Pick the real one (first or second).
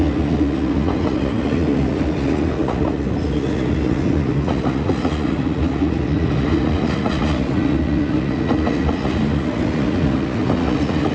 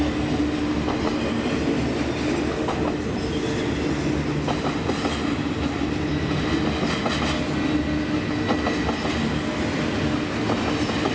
second